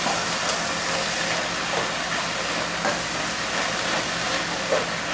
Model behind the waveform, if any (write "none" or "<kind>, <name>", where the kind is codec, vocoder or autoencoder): none